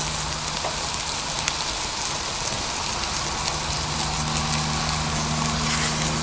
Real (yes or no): yes